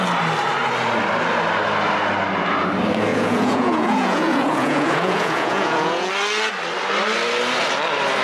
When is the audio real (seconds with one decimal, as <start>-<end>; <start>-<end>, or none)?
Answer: 0.0-3.1; 6.1-8.2